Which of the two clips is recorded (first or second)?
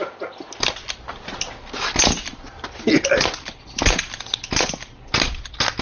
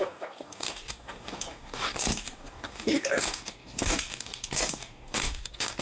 first